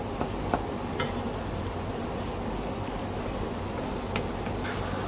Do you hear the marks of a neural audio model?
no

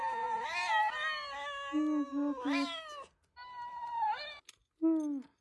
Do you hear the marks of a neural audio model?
no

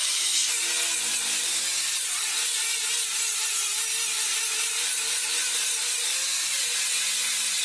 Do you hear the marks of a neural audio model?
no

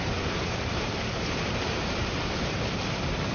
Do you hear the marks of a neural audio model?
yes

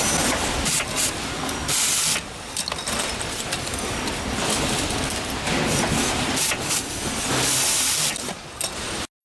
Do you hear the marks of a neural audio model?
no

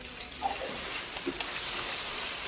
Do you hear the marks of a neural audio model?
no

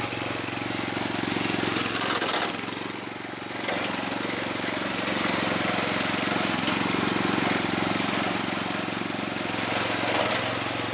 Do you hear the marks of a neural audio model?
no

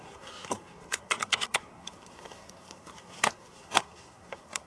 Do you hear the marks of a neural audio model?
yes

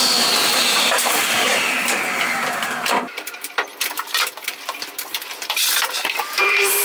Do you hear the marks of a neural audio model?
yes